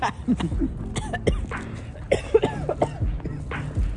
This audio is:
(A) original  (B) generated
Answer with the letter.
A